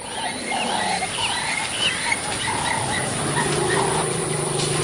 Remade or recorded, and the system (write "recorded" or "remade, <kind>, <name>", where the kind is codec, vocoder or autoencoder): remade, vocoder, BigVGAN v2